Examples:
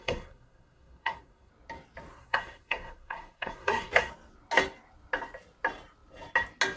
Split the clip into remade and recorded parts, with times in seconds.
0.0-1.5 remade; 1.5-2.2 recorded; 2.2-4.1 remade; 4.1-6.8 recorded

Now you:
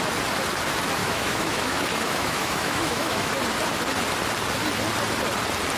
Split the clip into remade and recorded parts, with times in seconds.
0.0-1.0 recorded; 1.0-3.3 remade; 3.3-5.8 recorded

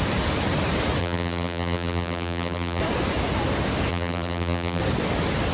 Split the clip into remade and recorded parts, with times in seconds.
0.0-1.0 recorded; 1.0-2.8 remade; 2.8-3.9 recorded; 3.9-4.8 remade; 4.8-5.5 recorded